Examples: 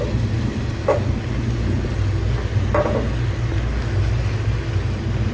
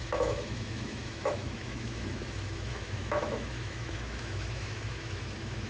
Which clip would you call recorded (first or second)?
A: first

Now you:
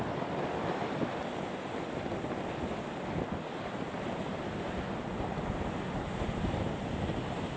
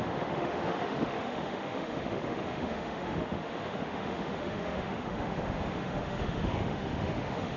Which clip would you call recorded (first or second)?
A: first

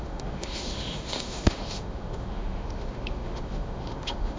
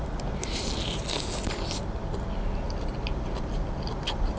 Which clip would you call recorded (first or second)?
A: second